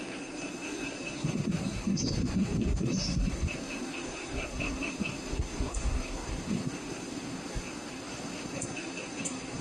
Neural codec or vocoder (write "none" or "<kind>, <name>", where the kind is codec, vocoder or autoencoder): codec, SNAC